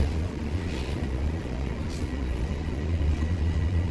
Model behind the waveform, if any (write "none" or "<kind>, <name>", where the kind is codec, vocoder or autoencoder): vocoder, Vocos